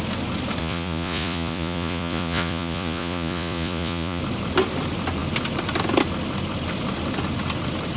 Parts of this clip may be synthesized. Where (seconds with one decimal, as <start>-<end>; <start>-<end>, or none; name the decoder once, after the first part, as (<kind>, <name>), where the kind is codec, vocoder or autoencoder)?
0.6-4.2 (vocoder, Vocos)